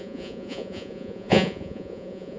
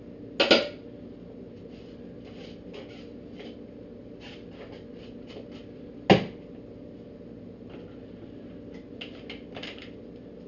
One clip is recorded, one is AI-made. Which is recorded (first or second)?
second